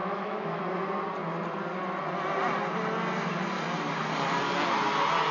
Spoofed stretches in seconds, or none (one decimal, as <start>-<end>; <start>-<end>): 0.0-0.6